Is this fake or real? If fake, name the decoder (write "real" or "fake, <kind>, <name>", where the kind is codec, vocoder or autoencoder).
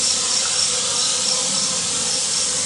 real